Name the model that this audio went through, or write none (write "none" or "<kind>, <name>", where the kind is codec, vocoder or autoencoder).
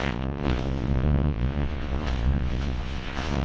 vocoder, Vocos